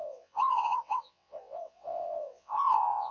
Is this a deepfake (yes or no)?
yes